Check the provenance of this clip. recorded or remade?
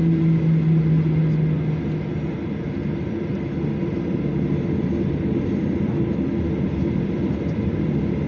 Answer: recorded